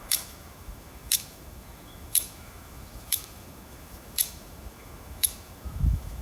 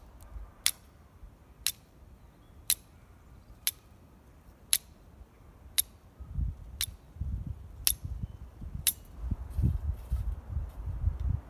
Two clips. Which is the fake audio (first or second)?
first